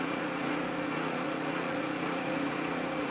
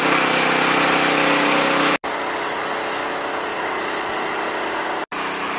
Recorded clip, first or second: second